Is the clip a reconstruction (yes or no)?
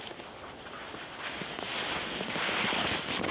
no